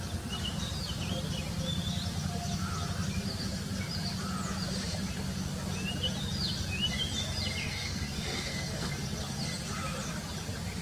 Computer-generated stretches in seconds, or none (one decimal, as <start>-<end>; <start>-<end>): 7.6-8.9